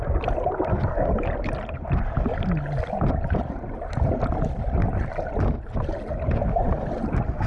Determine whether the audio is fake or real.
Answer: real